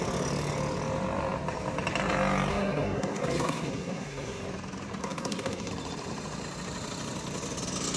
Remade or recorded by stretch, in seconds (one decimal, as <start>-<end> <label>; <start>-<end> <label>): 0.0-2.5 recorded; 2.5-4.4 remade; 4.4-5.0 recorded; 5.0-5.7 remade; 5.7-8.0 recorded